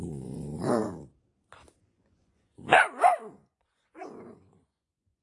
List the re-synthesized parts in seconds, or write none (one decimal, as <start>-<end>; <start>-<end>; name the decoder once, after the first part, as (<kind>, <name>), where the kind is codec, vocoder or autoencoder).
0.0-0.8 (vocoder, Vocos); 1.8-5.2